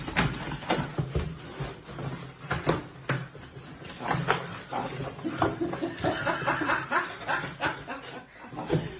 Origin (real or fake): real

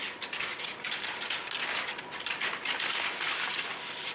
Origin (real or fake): real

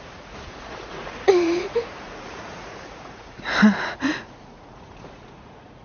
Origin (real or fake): fake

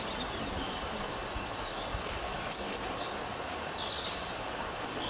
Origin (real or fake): real